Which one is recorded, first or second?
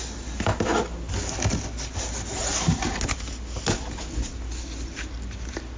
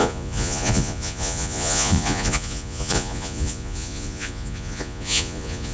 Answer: first